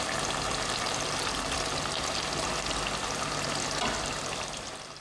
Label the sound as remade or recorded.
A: recorded